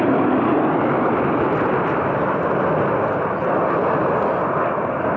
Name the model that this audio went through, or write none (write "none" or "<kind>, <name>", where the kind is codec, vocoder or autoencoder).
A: none